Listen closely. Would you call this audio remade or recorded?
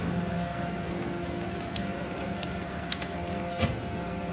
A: remade